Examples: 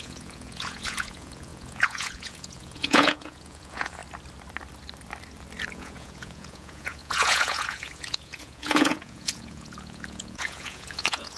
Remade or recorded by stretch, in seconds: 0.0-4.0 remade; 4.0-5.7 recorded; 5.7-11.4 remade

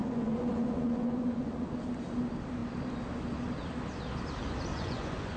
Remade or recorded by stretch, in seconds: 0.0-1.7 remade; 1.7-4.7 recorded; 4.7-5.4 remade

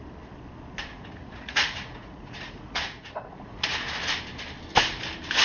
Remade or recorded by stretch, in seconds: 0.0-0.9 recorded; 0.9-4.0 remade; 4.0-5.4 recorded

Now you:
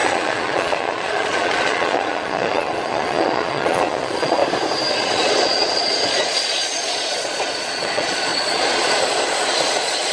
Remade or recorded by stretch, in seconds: 0.0-4.4 remade; 4.4-4.9 recorded; 4.9-10.1 remade

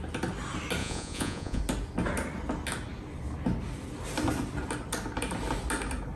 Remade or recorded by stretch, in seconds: 0.0-0.8 recorded; 0.8-1.6 remade; 1.6-6.2 recorded

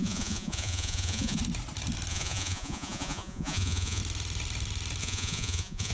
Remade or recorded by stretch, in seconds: 0.0-1.4 remade; 1.4-2.1 recorded; 2.1-4.0 remade; 4.0-5.0 recorded; 5.0-5.9 remade